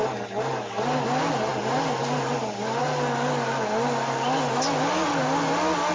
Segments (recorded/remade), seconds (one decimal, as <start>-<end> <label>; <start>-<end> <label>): 0.0-5.9 recorded